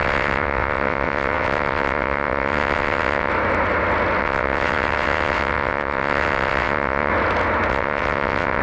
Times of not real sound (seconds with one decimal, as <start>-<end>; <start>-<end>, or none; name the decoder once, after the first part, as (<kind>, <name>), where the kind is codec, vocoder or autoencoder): 0.0-3.3 (vocoder, WaveNeXt); 4.2-7.1; 7.7-8.6